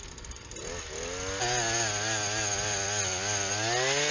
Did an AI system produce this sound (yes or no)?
no